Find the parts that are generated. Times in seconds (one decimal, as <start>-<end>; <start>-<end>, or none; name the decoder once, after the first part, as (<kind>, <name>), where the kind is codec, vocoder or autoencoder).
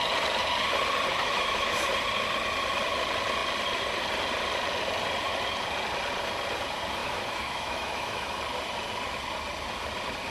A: 1.1-1.9 (autoencoder, DAC-VAE); 7.0-8.4